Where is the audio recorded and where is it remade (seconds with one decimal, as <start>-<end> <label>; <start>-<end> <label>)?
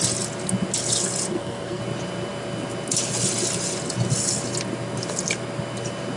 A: 0.0-1.3 recorded; 1.3-1.8 remade; 1.8-6.2 recorded